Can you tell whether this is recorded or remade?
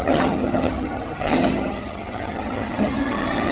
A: remade